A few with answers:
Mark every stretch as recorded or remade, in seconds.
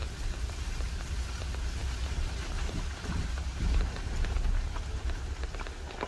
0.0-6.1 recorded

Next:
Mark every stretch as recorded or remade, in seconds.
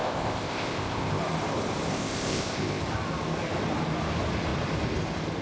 0.0-1.2 remade; 1.2-1.9 recorded; 1.9-2.8 remade; 2.8-5.4 recorded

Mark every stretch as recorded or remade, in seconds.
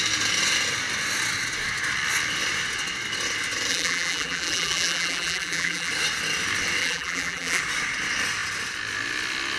0.0-3.7 recorded; 3.7-5.9 remade; 5.9-6.8 recorded; 6.8-7.6 remade; 7.6-9.6 recorded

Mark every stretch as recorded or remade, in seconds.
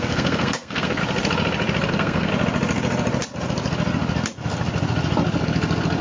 0.0-1.0 remade; 1.0-1.9 recorded; 1.9-2.3 remade; 2.3-6.0 recorded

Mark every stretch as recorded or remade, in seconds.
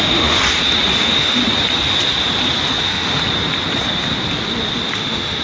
0.0-0.4 remade; 0.4-1.0 recorded; 1.0-1.4 remade; 1.4-2.8 recorded; 2.8-3.2 remade; 3.2-4.9 recorded; 4.9-5.4 remade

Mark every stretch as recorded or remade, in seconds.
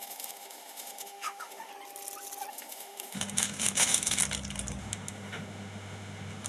0.0-1.7 remade; 1.7-2.5 recorded; 2.5-4.2 remade; 4.2-4.8 recorded; 4.8-6.5 remade